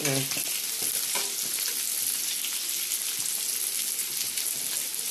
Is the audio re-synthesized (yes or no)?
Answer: no